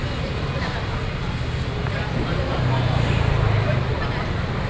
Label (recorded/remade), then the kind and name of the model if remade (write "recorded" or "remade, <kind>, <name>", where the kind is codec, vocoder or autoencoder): recorded